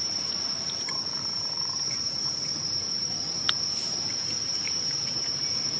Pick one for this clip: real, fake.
fake